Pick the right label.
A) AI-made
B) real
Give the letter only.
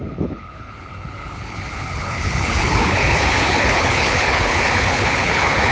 A